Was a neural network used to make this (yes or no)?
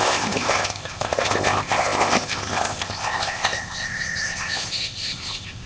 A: yes